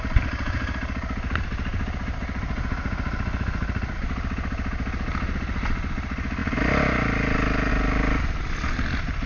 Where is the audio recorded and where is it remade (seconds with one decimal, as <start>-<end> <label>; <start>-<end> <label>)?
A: 0.0-9.3 recorded